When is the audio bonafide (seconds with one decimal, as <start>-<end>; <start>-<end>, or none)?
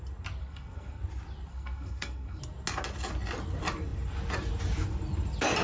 0.0-0.4; 1.0-1.5; 2.4-5.6